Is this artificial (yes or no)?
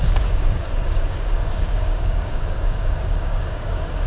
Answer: yes